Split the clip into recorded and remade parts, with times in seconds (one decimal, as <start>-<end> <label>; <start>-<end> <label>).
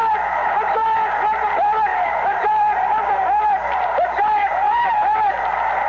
0.0-0.8 recorded; 0.8-1.5 remade; 1.5-1.9 recorded; 1.9-5.4 remade; 5.4-5.9 recorded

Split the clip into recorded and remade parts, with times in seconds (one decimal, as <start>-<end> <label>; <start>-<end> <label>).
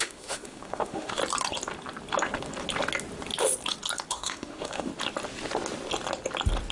0.0-1.2 remade; 1.2-4.1 recorded; 4.1-4.9 remade; 4.9-6.7 recorded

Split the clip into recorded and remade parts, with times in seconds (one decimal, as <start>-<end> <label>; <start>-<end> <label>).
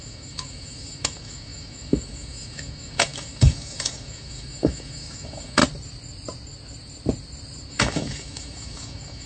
0.0-5.6 remade; 5.6-7.7 recorded; 7.7-9.3 remade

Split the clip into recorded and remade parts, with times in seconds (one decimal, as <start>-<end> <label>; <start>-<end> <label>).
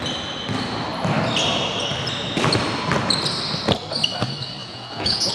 0.0-4.6 recorded; 4.6-5.3 remade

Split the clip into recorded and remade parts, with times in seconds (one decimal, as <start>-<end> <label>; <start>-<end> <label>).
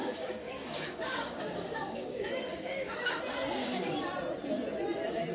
0.0-3.2 remade; 3.2-3.6 recorded; 3.6-4.1 remade; 4.1-5.3 recorded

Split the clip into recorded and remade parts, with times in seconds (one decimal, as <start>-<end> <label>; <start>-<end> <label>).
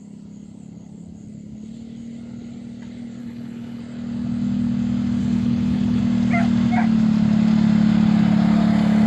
0.0-3.2 recorded; 3.2-3.8 remade; 3.8-5.2 recorded; 5.2-6.0 remade; 6.0-9.1 recorded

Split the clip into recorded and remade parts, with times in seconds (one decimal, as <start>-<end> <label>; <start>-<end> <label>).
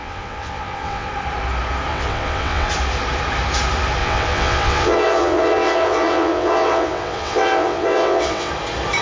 0.0-1.1 remade; 1.1-1.9 recorded; 1.9-2.7 remade; 2.7-4.0 recorded; 4.0-8.5 remade; 8.5-9.0 recorded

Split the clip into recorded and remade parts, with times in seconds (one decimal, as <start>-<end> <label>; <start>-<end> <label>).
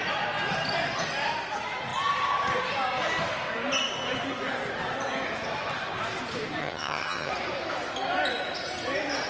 0.0-6.6 recorded; 6.6-7.3 remade; 7.3-9.3 recorded